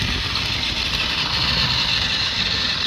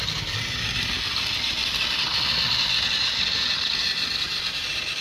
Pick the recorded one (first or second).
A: second